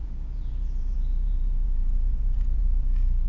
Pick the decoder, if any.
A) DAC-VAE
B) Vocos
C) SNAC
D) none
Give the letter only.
B